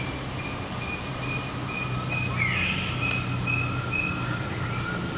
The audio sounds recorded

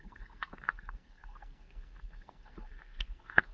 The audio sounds remade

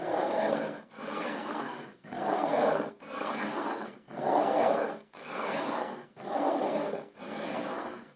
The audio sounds remade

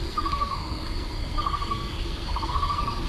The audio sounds remade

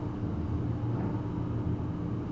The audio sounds recorded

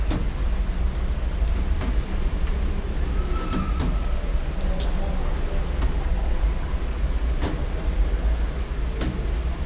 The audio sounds recorded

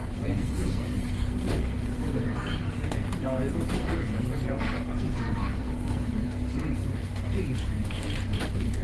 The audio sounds remade